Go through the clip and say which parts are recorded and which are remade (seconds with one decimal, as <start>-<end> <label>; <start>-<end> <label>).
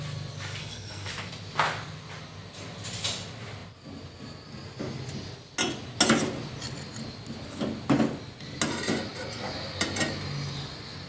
0.0-0.6 recorded; 0.6-1.1 remade; 1.1-11.1 recorded